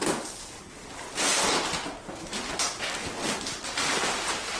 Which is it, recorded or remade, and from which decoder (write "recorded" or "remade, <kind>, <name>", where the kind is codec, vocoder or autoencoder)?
recorded